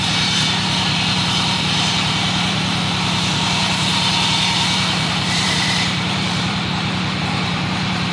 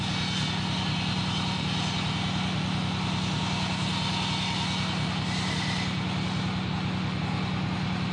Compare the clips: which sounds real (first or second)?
second